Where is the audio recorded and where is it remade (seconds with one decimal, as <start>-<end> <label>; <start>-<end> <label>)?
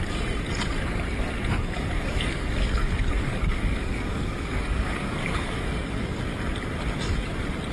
0.0-1.6 recorded; 1.6-6.2 remade; 6.2-7.7 recorded